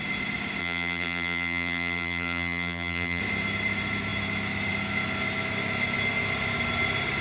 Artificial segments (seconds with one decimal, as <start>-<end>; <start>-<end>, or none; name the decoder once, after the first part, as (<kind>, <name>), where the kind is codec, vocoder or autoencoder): 0.6-3.2 (vocoder, BigVGAN v2)

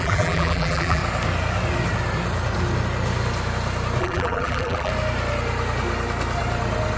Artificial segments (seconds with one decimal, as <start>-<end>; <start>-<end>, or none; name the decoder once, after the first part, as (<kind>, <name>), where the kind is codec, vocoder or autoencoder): 0.0-1.0 (vocoder, BigVGAN v2); 4.0-4.9

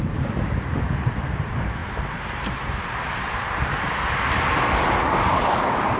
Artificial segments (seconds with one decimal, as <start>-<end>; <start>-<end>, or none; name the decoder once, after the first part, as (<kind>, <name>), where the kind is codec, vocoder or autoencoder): 0.0-3.6 (vocoder, BigVGAN v2); 5.4-6.0

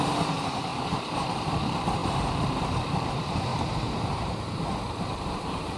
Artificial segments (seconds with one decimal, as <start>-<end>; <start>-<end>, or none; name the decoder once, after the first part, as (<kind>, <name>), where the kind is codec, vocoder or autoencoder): 0.0-3.5 (vocoder, BigVGAN v2); 4.1-5.8

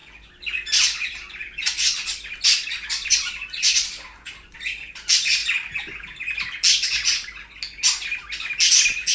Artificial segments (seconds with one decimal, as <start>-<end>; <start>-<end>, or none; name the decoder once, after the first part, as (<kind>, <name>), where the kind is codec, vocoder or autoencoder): 0.0-4.9 (vocoder, BigVGAN v2)